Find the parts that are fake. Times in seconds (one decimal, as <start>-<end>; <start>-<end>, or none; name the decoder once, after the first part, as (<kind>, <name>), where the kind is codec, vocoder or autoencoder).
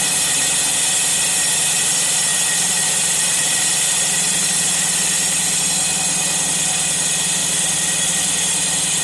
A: 2.3-5.6 (vocoder, BigVGAN v2); 7.4-8.1